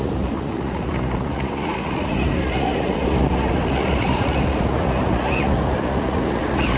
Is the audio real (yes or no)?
no